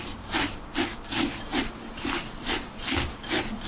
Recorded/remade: recorded